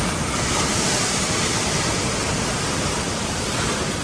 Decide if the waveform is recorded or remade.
recorded